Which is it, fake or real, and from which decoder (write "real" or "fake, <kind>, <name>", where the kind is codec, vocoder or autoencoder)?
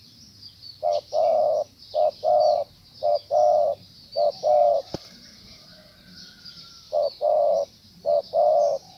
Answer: fake, vocoder, BigVGAN v2